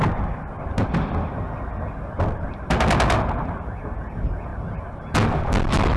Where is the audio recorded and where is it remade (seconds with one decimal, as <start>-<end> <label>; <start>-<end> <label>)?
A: 0.0-6.0 recorded